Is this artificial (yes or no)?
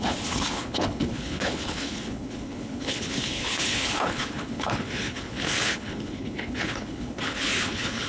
yes